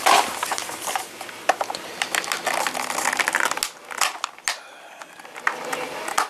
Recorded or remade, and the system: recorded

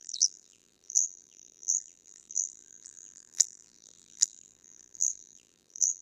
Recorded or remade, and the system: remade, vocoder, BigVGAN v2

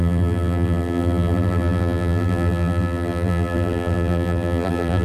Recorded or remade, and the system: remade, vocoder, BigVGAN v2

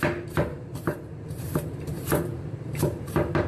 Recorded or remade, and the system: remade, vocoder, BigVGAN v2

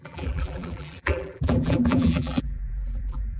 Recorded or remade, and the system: remade, vocoder, BigVGAN v2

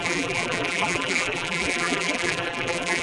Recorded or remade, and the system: remade, vocoder, BigVGAN v2